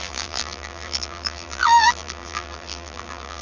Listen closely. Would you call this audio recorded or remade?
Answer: remade